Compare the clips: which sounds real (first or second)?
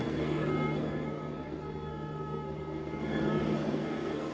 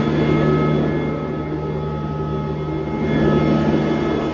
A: second